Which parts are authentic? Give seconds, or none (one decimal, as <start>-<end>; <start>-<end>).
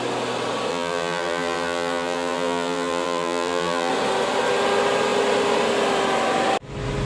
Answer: 0.0-0.7; 3.9-7.1